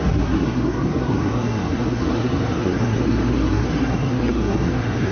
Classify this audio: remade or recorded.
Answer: remade